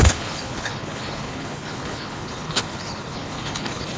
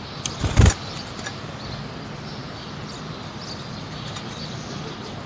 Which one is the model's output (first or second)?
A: first